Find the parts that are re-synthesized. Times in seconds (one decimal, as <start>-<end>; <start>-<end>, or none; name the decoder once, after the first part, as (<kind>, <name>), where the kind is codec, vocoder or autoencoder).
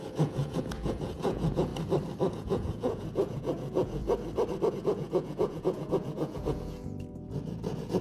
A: 0.0-1.7 (vocoder, Vocos); 2.3-4.0; 4.7-8.0